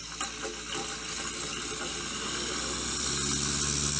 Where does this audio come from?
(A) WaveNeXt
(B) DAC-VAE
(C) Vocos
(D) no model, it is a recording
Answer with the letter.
D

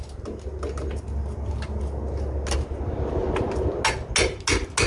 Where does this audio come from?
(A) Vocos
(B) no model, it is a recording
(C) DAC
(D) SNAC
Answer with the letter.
B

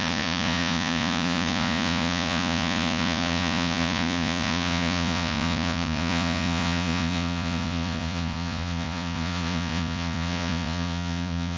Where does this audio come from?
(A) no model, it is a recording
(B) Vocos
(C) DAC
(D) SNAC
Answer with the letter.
B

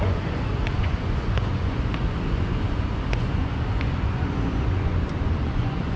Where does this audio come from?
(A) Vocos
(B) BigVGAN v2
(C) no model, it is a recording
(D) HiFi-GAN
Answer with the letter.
A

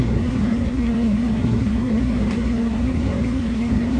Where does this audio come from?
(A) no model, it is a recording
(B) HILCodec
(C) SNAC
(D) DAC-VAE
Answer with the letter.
C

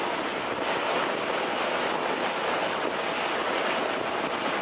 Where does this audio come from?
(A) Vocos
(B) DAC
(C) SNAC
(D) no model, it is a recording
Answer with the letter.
D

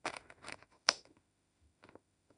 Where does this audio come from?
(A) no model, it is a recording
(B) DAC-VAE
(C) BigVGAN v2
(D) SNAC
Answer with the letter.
B